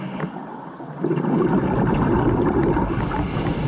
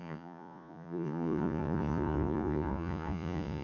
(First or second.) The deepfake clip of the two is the second